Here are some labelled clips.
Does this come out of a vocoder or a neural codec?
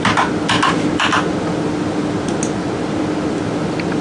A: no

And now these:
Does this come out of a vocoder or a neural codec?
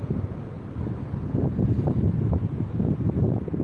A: no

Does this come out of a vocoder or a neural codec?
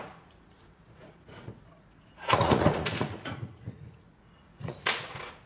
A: yes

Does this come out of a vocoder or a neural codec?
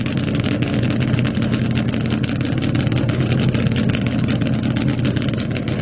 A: no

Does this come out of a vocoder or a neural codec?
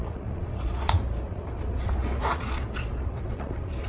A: yes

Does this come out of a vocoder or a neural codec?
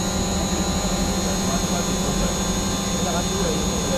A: no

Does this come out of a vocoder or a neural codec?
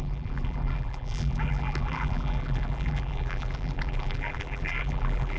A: yes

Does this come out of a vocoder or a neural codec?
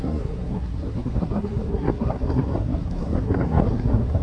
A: yes